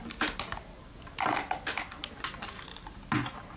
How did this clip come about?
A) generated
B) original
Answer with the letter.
B